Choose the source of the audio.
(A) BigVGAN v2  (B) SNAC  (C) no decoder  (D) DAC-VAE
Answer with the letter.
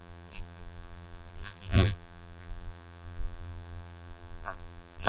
A